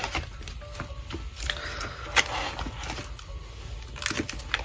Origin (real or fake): real